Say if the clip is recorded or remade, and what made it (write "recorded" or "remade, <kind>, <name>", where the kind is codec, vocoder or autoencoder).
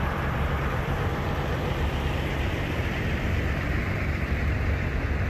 remade, vocoder, BigVGAN v2